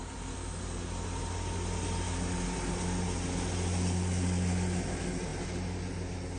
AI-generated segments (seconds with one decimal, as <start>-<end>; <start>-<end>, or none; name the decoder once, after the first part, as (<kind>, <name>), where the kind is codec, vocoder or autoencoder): none